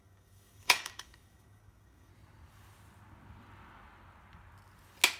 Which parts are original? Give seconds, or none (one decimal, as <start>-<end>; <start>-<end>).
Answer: 2.1-5.2